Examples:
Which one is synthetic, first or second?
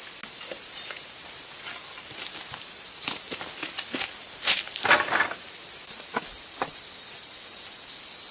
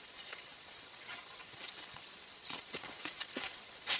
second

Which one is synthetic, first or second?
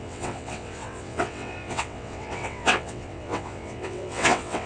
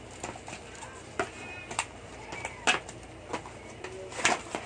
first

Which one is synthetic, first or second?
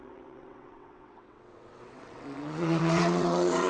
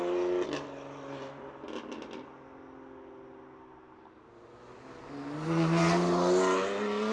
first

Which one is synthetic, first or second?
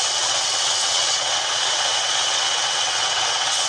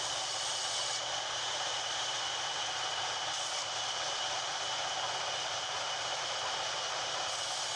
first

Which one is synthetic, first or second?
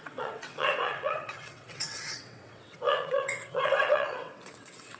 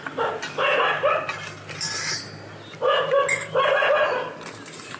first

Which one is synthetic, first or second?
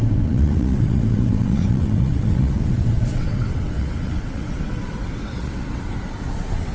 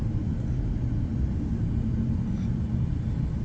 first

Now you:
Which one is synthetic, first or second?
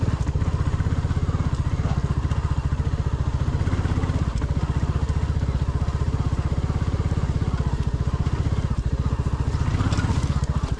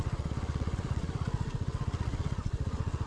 second